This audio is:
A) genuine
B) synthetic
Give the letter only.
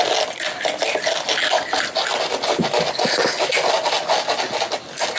A